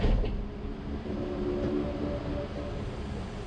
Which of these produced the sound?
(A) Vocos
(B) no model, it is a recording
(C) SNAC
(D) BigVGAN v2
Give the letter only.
B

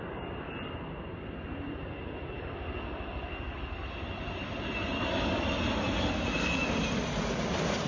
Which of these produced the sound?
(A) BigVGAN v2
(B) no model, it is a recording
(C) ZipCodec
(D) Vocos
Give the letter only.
B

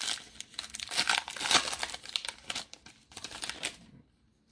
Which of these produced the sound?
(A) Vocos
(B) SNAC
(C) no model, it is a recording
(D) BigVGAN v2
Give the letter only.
C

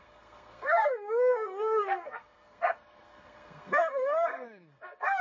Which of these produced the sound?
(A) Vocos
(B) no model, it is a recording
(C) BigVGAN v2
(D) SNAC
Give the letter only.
D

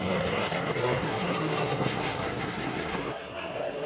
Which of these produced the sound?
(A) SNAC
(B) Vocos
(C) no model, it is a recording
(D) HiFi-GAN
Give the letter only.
A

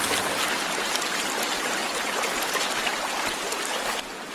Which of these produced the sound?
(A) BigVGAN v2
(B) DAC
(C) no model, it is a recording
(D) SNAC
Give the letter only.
C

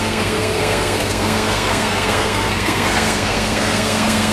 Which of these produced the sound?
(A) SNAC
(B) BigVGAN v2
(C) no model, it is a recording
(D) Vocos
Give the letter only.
A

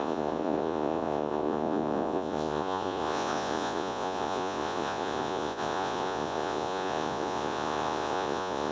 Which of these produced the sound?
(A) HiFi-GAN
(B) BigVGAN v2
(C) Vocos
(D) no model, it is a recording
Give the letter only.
C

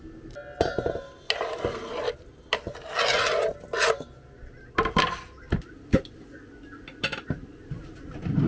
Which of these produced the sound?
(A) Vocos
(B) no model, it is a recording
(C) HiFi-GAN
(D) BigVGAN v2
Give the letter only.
B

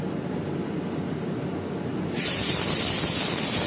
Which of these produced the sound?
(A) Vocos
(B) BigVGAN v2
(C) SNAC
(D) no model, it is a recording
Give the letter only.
D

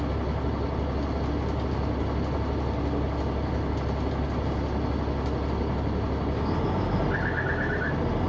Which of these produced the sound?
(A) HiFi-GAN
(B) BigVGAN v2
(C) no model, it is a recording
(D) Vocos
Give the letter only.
C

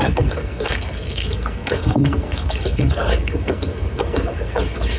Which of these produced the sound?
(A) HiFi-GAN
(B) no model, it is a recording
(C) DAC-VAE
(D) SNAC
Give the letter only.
D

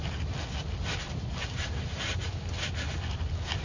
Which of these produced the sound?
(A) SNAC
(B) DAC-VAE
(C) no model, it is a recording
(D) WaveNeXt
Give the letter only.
C